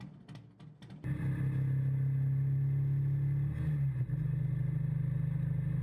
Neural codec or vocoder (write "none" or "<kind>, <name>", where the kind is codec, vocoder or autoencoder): none